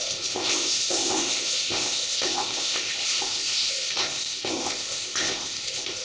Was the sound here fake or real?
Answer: fake